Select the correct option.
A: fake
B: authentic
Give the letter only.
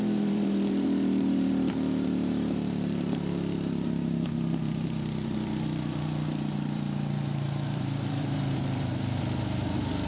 A